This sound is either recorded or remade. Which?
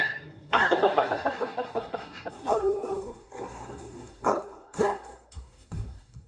remade